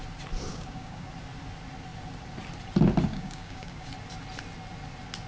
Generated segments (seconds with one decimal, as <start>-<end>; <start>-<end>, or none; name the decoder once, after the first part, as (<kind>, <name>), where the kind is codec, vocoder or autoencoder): 0.5-1.1 (codec, DAC); 3.1-3.9